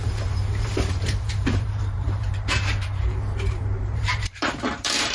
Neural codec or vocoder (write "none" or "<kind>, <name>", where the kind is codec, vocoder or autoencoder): vocoder, BigVGAN v2